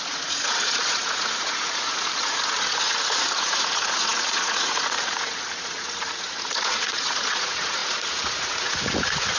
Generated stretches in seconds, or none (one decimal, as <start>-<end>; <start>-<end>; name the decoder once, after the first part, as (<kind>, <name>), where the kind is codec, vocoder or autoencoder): 0.0-9.4 (vocoder, Vocos)